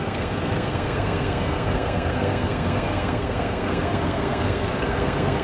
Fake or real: fake